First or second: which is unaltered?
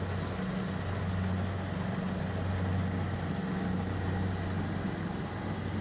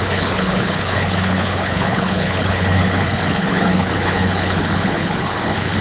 first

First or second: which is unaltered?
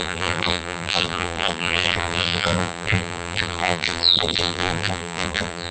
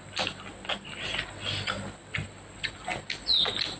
second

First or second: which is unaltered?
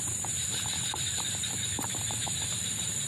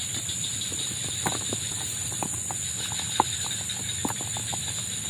second